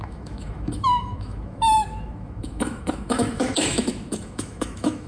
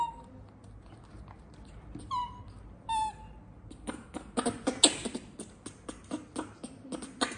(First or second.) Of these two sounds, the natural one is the second